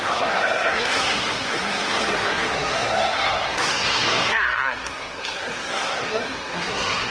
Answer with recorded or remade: remade